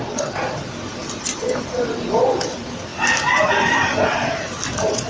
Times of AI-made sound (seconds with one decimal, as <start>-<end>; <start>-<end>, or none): none